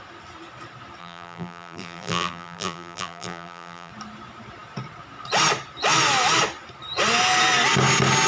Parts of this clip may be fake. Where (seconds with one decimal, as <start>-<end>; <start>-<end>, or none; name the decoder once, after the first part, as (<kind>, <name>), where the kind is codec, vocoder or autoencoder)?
1.0-3.9 (vocoder, BigVGAN v2)